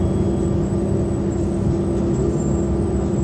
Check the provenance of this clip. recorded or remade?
recorded